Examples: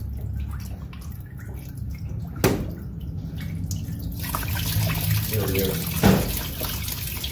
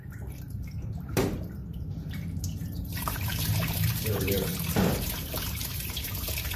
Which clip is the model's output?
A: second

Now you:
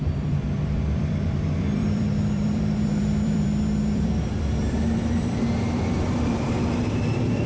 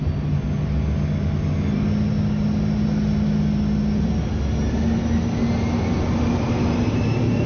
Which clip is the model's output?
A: first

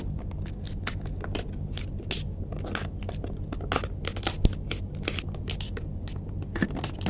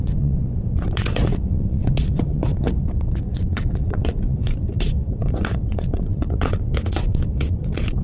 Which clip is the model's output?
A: second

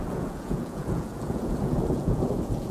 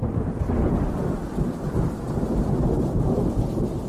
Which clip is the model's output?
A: first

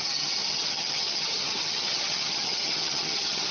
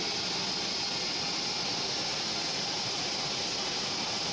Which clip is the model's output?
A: first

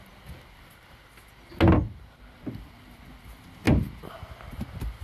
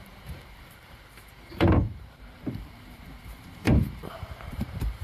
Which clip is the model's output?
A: second